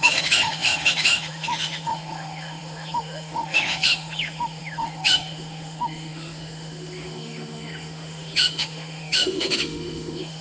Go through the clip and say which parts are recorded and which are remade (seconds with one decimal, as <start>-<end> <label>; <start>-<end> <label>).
0.0-10.4 remade